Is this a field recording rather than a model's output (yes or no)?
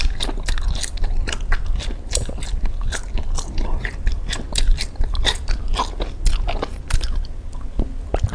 yes